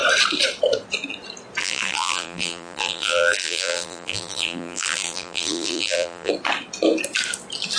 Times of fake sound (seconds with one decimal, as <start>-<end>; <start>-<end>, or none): 1.6-6.3